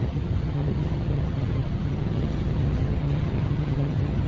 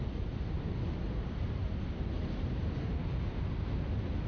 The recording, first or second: second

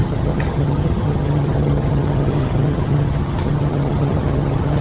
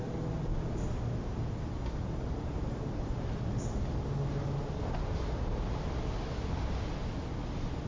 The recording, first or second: second